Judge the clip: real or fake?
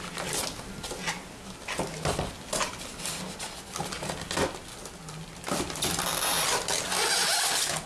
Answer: real